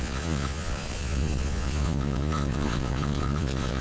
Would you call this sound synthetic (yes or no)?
yes